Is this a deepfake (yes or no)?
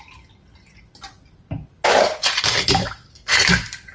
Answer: no